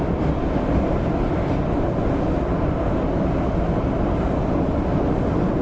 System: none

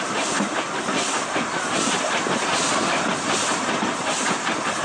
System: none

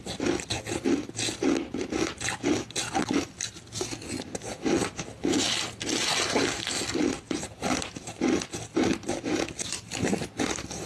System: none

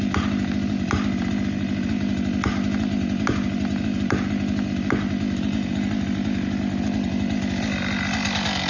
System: none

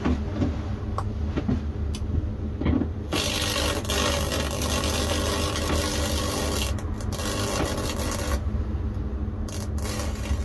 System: none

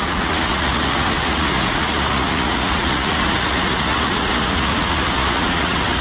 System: vocoder, Vocos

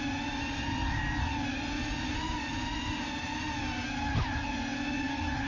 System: none